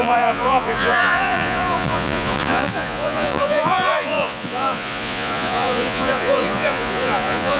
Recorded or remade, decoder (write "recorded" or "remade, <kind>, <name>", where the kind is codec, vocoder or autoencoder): remade, vocoder, Vocos